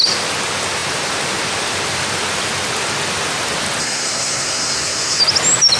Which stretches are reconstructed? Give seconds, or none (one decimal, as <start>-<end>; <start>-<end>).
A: 3.8-5.2